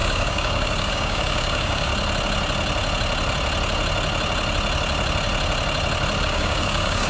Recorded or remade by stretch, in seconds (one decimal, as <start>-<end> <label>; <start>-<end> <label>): 0.0-1.9 remade; 1.9-6.2 recorded; 6.2-7.1 remade

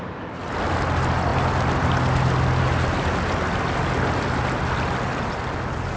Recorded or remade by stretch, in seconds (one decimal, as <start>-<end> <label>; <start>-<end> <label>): 0.0-6.0 recorded

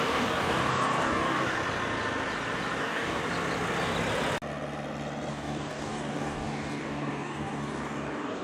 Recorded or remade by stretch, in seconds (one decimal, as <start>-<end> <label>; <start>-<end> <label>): 0.0-1.6 remade; 1.6-2.8 recorded; 2.8-3.2 remade; 3.2-5.3 recorded; 5.3-8.4 remade

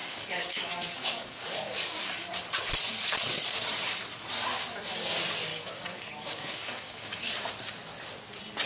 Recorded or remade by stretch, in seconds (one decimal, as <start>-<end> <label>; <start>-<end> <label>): 0.0-2.3 remade; 2.3-5.5 recorded; 5.5-7.3 remade; 7.3-8.7 recorded